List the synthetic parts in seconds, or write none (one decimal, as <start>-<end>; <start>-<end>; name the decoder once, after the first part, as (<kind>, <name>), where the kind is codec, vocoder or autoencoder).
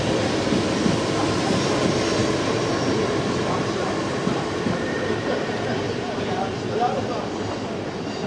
2.2-6.4 (vocoder, BigVGAN v2)